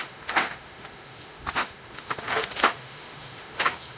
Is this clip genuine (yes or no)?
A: no